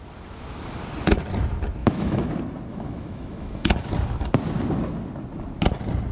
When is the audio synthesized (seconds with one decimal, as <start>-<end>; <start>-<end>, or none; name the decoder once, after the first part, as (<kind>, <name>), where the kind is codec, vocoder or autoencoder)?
1.8-2.3 (autoencoder, DAC-VAE); 2.7-3.7